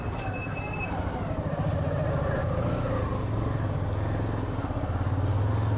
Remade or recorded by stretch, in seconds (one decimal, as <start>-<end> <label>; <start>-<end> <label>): 0.0-5.8 recorded